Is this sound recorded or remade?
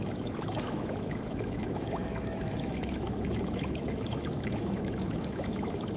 remade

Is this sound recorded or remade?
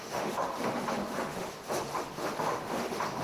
remade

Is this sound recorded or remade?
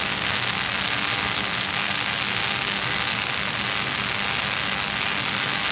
recorded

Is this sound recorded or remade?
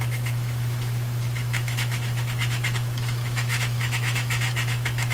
remade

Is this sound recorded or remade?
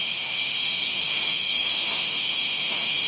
remade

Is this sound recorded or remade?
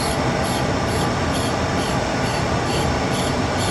recorded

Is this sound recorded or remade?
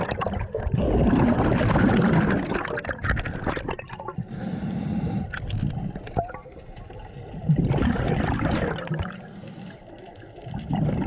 recorded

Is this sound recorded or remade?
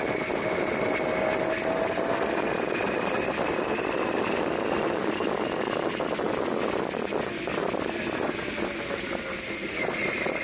recorded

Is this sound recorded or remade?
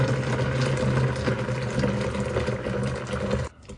recorded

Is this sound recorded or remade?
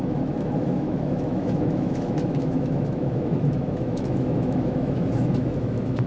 remade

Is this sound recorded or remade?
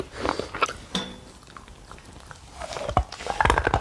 recorded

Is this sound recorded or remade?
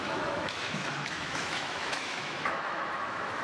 remade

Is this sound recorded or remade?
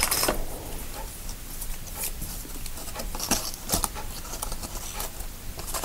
recorded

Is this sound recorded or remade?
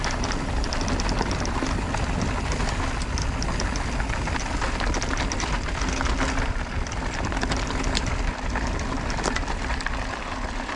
recorded